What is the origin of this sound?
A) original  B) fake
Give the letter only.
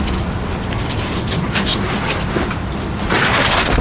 A